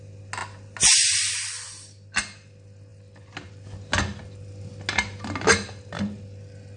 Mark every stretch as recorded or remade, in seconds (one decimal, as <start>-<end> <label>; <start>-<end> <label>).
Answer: 0.0-6.8 recorded